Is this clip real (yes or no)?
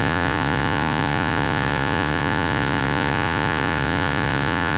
no